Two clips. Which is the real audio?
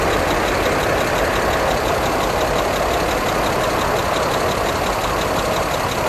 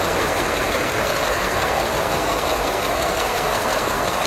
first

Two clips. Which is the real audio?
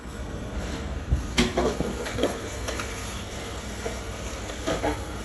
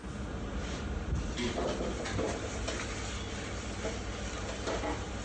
second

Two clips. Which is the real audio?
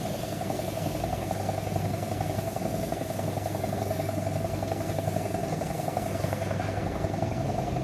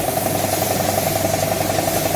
second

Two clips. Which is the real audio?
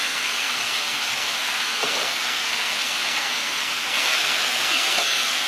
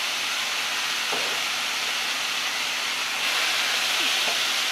second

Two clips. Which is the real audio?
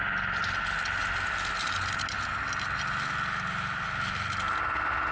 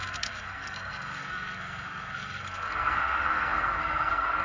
first